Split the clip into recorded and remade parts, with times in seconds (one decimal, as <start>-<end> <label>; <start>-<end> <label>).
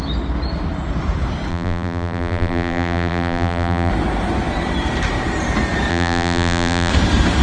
0.0-1.5 recorded; 1.5-3.9 remade; 3.9-5.9 recorded; 5.9-6.9 remade; 6.9-7.4 recorded